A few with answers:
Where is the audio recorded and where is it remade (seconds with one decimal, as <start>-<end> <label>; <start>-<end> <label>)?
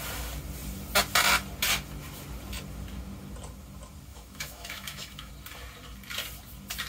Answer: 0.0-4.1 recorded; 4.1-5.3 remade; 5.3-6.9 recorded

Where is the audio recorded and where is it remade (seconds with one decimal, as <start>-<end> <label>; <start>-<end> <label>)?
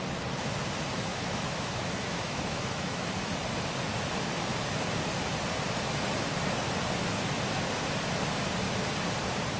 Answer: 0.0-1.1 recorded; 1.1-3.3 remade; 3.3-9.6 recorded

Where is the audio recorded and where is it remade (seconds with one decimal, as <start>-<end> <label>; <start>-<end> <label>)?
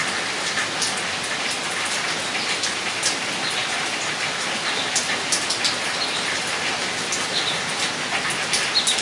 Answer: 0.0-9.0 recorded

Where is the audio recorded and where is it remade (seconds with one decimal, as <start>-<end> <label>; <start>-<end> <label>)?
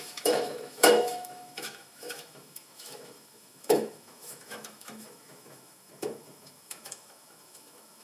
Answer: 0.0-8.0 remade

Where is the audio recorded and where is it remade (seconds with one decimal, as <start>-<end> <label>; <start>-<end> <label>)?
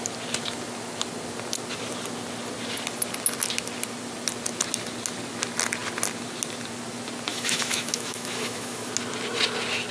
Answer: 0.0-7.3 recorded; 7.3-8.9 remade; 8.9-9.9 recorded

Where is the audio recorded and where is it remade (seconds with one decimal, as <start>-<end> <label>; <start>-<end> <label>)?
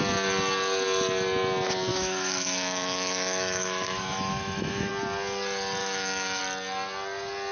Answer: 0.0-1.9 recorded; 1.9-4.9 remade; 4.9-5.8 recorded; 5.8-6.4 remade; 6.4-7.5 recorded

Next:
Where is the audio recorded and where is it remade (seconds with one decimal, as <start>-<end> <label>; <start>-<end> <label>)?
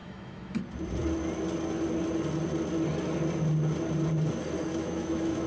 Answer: 0.0-0.6 remade; 0.6-4.7 recorded; 4.7-5.5 remade